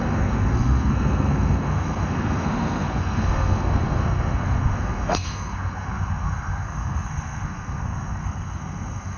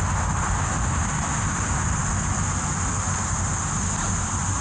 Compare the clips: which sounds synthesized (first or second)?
first